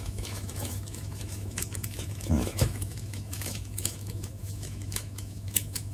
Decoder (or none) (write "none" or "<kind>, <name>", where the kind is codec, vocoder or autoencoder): autoencoder, DAC-VAE